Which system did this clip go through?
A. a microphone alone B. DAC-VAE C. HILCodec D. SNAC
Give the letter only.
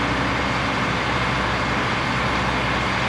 A